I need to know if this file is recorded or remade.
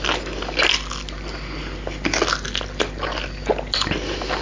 recorded